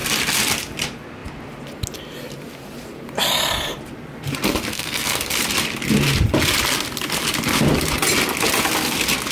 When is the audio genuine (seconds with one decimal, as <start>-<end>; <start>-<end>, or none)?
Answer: 0.0-4.7; 5.3-9.3